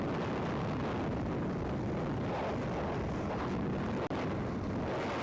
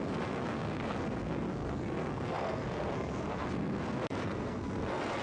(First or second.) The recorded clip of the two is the first